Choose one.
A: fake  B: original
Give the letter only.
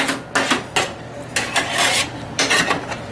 B